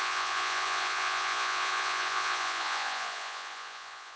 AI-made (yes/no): yes